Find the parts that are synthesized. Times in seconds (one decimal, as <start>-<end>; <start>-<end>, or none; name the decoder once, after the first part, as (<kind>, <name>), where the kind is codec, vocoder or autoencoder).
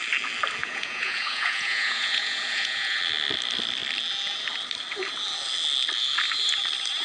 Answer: 0.6-3.0 (vocoder, Vocos)